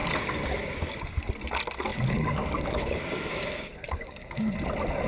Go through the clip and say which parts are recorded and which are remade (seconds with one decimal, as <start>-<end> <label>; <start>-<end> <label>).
0.0-1.3 remade; 1.3-1.9 recorded; 1.9-4.4 remade; 4.4-5.1 recorded